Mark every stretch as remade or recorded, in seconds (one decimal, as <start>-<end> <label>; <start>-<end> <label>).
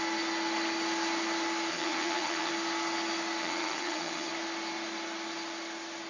0.0-1.7 recorded; 1.7-2.5 remade; 2.5-3.4 recorded; 3.4-4.3 remade; 4.3-6.1 recorded